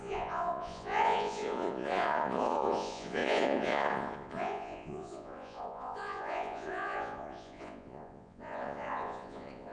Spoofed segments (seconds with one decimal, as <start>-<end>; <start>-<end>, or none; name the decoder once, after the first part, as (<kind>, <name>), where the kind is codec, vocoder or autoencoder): 0.0-9.7 (vocoder, Vocos)